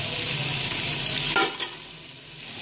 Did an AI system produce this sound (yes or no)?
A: no